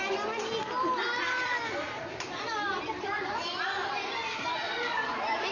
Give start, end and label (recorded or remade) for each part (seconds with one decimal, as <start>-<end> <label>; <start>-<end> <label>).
0.0-5.5 remade